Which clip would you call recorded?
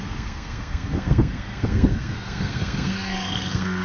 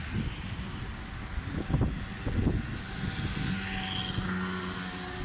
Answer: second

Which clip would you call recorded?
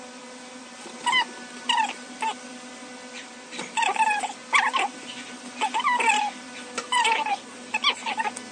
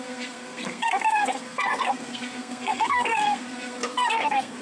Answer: first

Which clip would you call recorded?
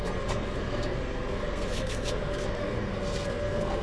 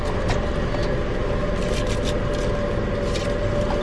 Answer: second